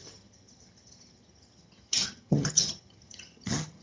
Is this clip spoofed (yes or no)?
yes